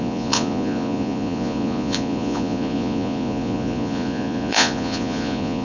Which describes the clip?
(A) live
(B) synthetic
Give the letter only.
B